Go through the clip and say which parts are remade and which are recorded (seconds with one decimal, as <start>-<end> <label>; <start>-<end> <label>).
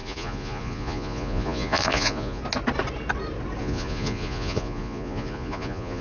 0.0-2.4 remade; 2.4-3.6 recorded; 3.6-6.0 remade